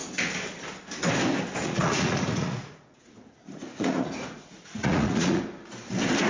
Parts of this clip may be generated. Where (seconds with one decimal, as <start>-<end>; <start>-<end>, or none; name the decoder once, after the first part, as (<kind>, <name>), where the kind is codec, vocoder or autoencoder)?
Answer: 1.6-5.4 (vocoder, Vocos)